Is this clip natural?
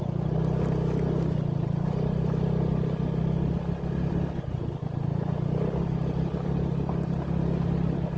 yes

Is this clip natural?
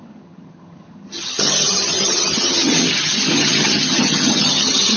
no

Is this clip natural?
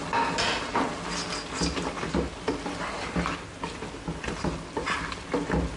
yes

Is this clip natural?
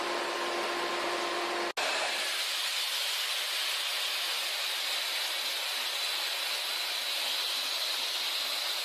yes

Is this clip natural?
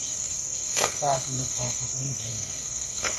no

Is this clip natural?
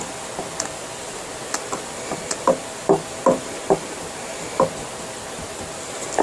yes